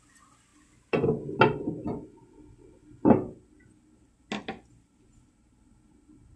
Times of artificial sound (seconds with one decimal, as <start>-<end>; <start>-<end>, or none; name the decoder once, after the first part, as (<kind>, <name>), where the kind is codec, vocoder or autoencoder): none